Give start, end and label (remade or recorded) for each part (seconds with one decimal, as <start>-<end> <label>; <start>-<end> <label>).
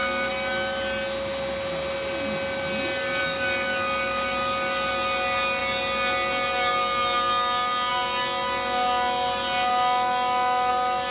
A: 0.0-11.1 recorded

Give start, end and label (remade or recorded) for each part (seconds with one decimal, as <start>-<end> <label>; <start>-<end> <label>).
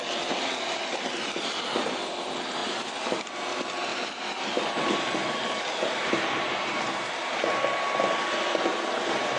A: 0.0-2.6 recorded; 2.6-3.2 remade; 3.2-3.9 recorded; 3.9-7.6 remade; 7.6-9.4 recorded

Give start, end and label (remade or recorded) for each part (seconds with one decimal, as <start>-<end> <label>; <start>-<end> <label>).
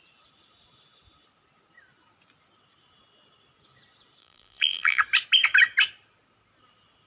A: 0.0-4.2 recorded; 4.2-5.0 remade; 5.0-7.1 recorded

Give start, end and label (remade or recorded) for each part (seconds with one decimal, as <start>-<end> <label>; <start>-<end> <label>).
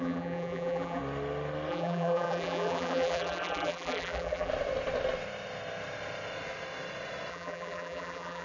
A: 0.0-1.0 remade; 1.0-1.7 recorded; 1.7-4.5 remade; 4.5-7.3 recorded; 7.3-8.4 remade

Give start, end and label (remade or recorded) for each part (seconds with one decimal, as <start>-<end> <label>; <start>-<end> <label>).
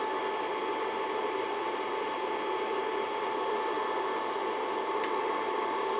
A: 0.0-6.0 recorded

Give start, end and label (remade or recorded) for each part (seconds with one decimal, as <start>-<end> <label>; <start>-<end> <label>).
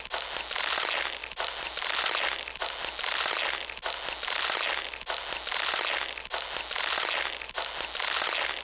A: 0.0-1.2 recorded; 1.2-2.6 remade; 2.6-8.6 recorded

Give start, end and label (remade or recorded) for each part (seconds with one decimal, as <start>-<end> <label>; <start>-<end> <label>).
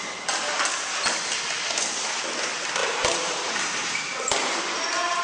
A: 0.0-2.8 recorded; 2.8-5.2 remade